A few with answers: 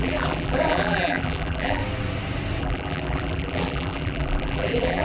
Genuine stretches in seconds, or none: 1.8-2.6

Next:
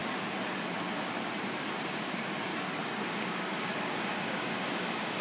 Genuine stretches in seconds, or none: 0.0-1.9; 2.5-3.2

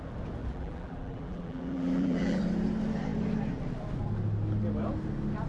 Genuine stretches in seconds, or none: 0.0-0.4; 2.4-5.5

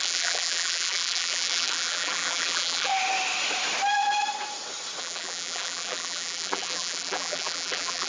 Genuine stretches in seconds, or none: 2.9-5.0

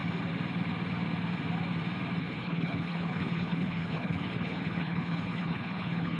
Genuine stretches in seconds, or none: 0.0-2.2

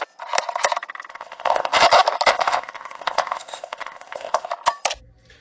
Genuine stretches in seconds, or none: 0.0-1.1; 1.8-2.3; 4.5-5.4

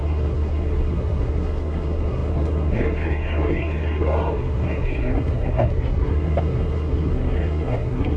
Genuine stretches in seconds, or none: none

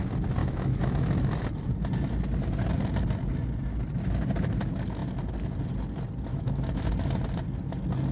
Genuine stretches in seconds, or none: 0.0-0.4; 1.3-6.3; 6.9-8.1